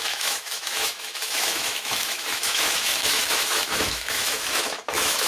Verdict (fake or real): fake